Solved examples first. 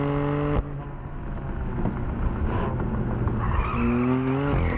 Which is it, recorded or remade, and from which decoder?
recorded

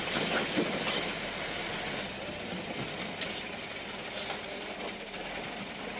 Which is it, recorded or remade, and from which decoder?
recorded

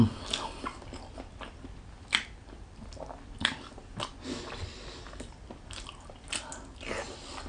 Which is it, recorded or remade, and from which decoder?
recorded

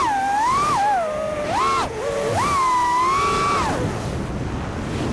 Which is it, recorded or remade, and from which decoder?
recorded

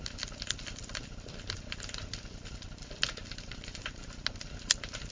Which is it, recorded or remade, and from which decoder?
recorded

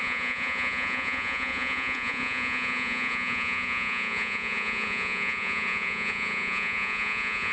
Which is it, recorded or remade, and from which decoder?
remade, vocoder, Vocos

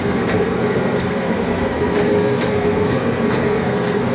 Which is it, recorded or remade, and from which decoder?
remade, codec, SNAC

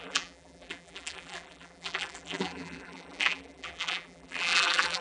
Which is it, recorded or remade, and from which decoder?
remade, vocoder, BigVGAN v2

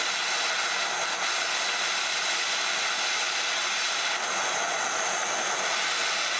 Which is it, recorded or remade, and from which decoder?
recorded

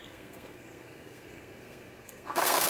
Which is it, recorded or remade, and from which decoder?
remade, codec, SNAC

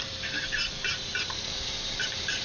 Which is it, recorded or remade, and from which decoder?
remade, vocoder, BigVGAN v2